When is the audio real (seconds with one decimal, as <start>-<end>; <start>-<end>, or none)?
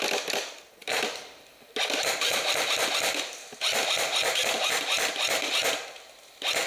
0.0-6.7